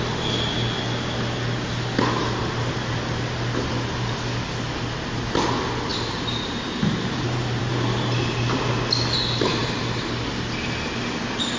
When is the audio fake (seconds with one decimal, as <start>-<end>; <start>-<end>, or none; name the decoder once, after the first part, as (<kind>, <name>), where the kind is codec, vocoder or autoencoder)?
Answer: 5.9-8.7 (vocoder, BigVGAN v2); 9.6-10.2